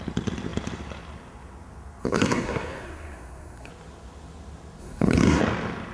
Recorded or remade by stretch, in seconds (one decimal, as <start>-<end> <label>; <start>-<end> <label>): 0.0-2.0 recorded; 2.0-3.7 remade; 3.7-4.8 recorded; 4.8-5.4 remade; 5.4-5.9 recorded